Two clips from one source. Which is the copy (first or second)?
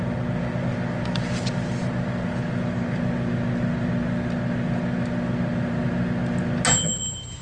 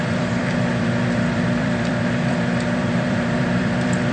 second